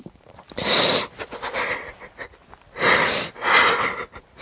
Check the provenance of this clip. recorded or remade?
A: recorded